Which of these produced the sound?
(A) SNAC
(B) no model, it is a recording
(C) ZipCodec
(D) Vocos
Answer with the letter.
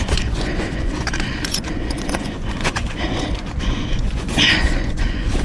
D